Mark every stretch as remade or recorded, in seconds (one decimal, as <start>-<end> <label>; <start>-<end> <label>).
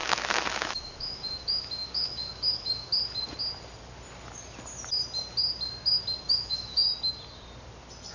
0.0-2.9 remade; 2.9-6.3 recorded; 6.3-6.8 remade; 6.8-8.1 recorded